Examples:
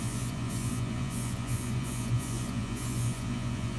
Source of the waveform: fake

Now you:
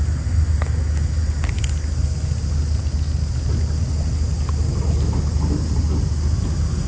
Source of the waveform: real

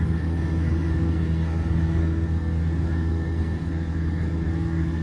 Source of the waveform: fake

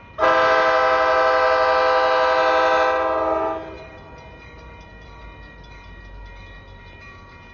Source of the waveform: real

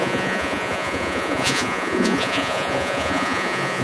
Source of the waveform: fake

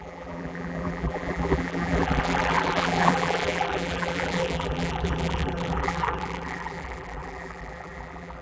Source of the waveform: fake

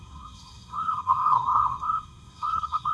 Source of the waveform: fake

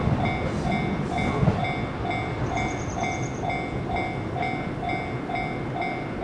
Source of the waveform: real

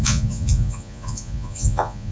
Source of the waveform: fake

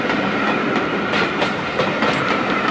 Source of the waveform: real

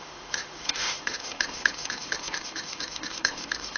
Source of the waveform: fake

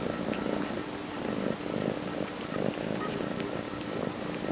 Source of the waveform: real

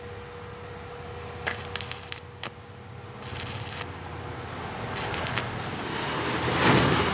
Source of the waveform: real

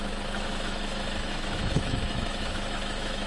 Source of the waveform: fake